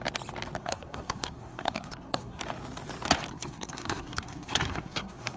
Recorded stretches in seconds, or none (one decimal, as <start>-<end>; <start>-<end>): 0.0-0.6; 2.4-3.3